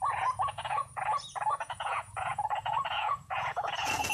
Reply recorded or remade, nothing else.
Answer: remade